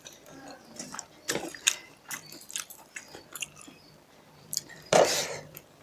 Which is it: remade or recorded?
remade